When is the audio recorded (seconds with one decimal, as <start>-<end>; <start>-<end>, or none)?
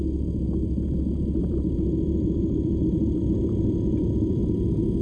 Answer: 0.0-1.4; 4.4-5.0